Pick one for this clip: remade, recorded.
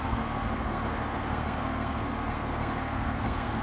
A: remade